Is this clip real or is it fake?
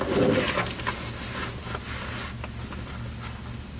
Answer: real